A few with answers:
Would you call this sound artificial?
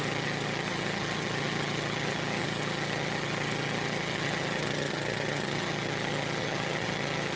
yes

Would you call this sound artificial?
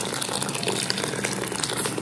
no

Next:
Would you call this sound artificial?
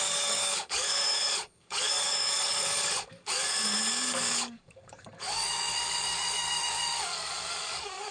yes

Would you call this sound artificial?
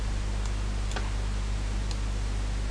no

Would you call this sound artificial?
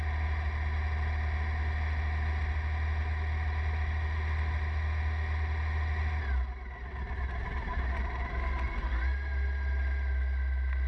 no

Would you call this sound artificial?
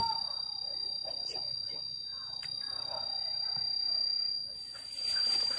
no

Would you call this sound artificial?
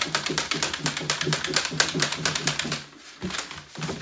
no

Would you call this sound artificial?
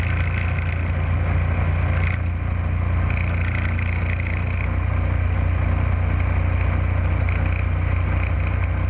no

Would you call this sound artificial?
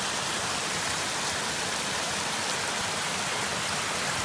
no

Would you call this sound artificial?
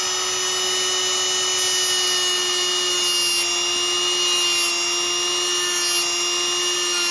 no